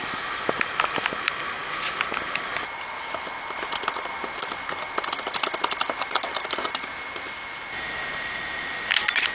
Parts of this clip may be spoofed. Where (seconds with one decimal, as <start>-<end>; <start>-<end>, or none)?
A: none